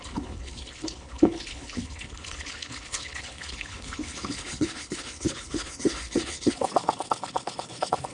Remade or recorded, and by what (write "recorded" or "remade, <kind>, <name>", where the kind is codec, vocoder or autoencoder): remade, codec, HILCodec